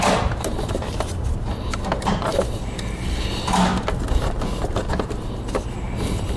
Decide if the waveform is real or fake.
real